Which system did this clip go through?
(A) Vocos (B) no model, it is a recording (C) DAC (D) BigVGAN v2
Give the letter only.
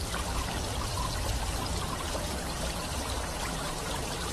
D